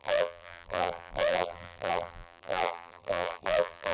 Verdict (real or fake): fake